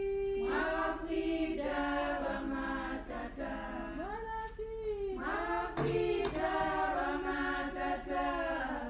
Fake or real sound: real